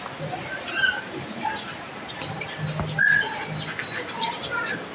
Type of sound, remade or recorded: recorded